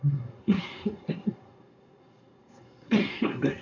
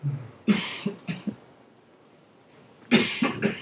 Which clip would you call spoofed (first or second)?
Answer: first